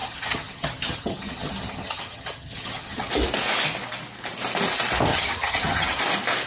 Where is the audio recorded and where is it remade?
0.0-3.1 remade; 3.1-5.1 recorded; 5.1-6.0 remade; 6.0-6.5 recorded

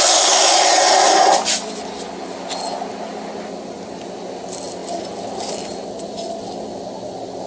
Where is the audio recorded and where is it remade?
0.0-7.5 recorded